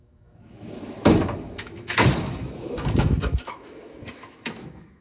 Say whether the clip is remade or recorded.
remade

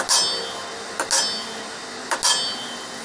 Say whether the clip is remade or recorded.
recorded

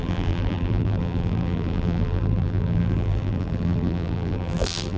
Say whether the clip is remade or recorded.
remade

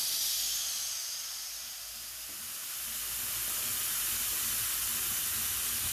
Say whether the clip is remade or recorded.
recorded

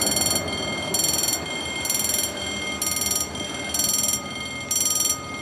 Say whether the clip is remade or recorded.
recorded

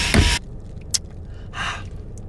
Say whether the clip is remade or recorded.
recorded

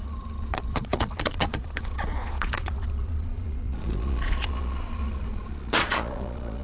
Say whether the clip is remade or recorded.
remade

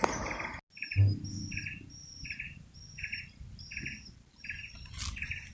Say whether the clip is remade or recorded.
recorded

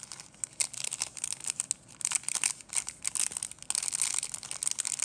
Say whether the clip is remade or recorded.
recorded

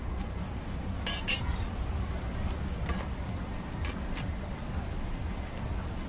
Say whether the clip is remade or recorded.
recorded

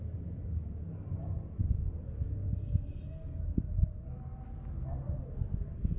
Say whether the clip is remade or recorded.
recorded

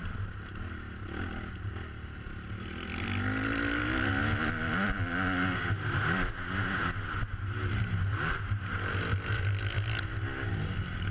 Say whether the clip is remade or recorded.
recorded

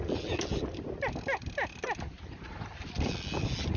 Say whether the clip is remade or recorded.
recorded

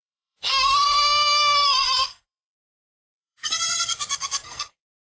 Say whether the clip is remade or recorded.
remade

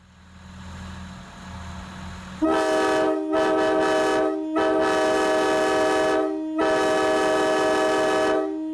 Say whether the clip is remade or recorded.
recorded